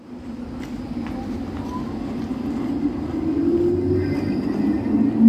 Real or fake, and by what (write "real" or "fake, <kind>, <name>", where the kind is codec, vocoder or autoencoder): real